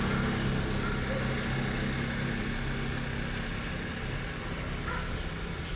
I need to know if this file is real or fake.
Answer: real